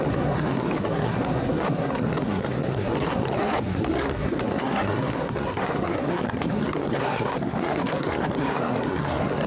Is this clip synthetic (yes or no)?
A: yes